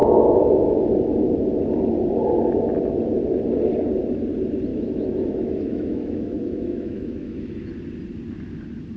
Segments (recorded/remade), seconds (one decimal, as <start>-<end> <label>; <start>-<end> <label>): 0.0-0.7 remade; 0.7-4.7 recorded; 4.7-7.7 remade; 7.7-9.0 recorded